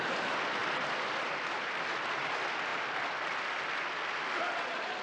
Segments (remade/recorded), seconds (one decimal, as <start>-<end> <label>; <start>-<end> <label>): 0.0-5.0 recorded